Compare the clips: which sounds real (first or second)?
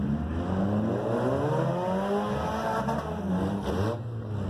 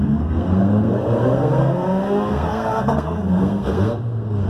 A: first